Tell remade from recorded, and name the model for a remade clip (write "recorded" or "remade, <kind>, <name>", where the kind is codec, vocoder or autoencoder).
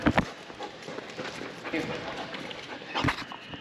recorded